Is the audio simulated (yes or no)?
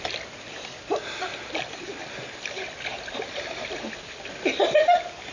no